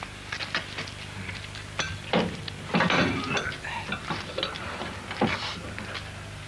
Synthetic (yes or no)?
no